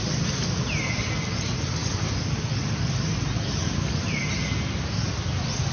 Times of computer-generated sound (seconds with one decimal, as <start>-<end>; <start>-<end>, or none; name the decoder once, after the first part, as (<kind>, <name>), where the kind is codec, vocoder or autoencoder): none